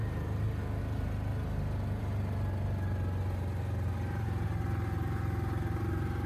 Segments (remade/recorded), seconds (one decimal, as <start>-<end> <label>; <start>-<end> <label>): 0.0-6.3 recorded